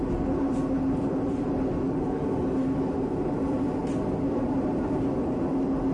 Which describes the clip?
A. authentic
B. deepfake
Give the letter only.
A